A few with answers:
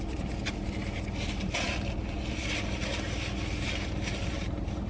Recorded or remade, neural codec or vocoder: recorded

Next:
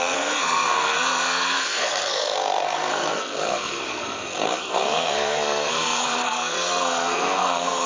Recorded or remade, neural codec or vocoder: remade, codec, SNAC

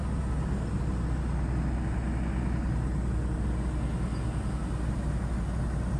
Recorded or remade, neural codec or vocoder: recorded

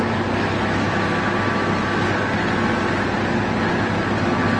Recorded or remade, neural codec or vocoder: recorded